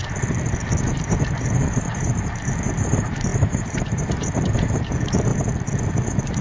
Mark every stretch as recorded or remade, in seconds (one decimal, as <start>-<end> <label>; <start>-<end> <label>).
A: 0.0-1.0 recorded; 1.0-5.3 remade; 5.3-5.9 recorded; 5.9-6.4 remade